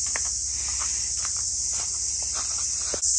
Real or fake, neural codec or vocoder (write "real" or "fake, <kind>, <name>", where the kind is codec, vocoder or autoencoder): real